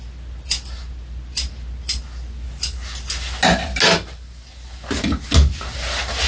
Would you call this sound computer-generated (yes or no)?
no